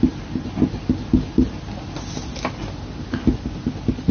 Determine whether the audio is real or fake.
real